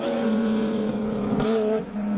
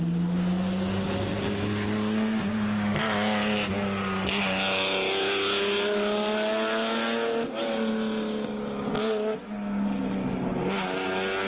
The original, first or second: second